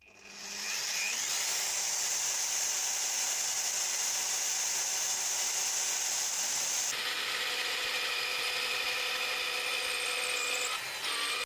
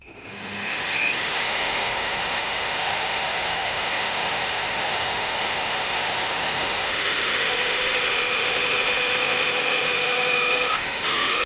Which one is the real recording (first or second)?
first